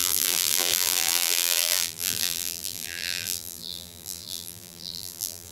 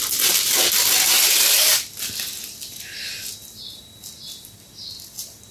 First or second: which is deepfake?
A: first